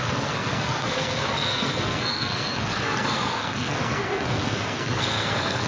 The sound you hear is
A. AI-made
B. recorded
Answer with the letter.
A